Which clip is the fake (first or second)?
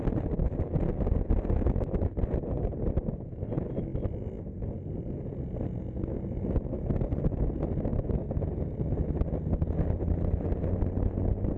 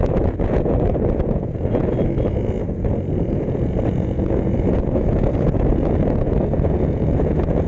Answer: second